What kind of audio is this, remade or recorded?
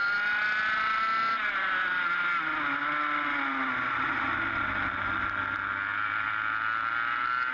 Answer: recorded